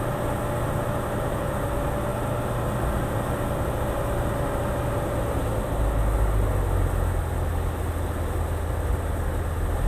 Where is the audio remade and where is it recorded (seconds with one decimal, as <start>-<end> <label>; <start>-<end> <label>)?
0.0-9.9 recorded